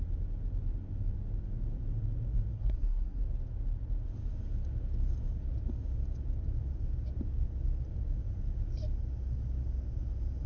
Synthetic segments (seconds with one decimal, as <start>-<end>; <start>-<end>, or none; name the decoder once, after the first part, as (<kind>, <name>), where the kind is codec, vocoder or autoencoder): 2.5-3.2 (codec, SNAC)